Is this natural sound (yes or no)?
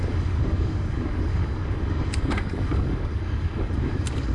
no